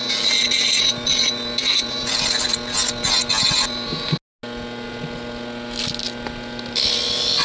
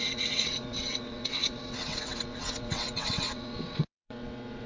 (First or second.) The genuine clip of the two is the first